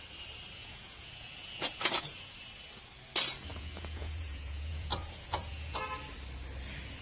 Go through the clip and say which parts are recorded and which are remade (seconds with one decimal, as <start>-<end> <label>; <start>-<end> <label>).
0.0-0.6 recorded; 0.6-2.3 remade; 2.3-3.5 recorded; 3.5-5.8 remade; 5.8-7.0 recorded